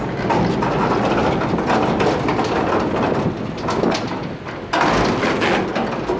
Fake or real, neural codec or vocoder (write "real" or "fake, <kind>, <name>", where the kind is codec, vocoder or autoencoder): real